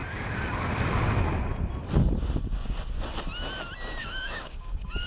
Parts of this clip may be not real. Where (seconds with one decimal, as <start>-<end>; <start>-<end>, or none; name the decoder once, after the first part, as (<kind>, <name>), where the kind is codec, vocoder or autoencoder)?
4.0-5.1 (codec, DAC)